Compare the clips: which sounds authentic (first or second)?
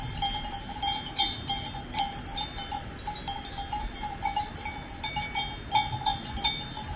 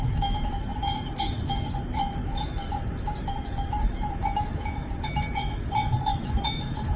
first